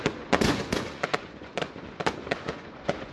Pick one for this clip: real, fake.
fake